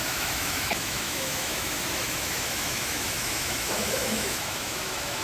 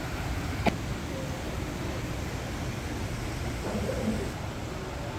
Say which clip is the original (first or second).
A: second